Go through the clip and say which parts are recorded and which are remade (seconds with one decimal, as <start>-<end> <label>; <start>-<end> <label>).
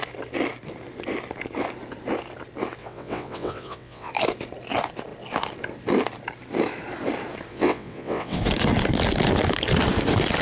0.0-2.8 recorded; 2.8-4.1 remade; 4.1-7.5 recorded; 7.5-8.4 remade; 8.4-10.4 recorded